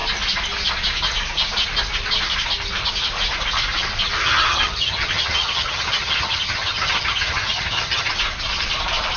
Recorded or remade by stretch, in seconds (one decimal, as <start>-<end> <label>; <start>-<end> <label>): 0.0-4.2 recorded; 4.2-8.1 remade; 8.1-9.2 recorded